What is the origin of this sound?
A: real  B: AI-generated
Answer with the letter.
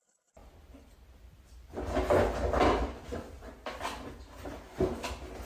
A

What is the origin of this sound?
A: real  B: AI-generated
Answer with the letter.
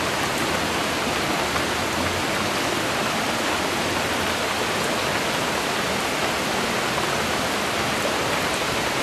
A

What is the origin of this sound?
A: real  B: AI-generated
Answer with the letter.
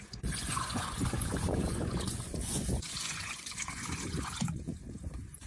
B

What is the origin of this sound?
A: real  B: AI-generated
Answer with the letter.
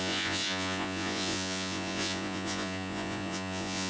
B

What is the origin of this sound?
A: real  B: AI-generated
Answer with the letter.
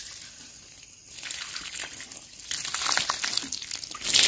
A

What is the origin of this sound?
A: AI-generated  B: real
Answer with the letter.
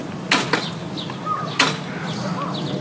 B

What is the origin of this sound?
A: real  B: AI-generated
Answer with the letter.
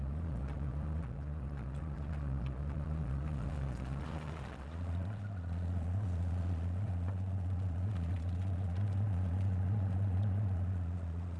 B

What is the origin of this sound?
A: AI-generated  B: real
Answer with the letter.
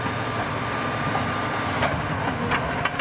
B